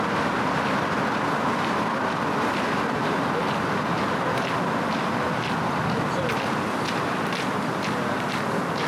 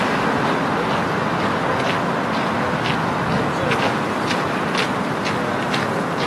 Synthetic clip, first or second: first